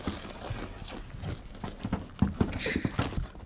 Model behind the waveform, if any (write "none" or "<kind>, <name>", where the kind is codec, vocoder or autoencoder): none